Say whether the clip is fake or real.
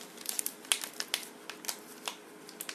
real